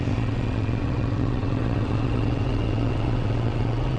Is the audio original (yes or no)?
no